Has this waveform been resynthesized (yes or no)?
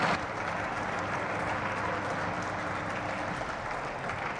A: no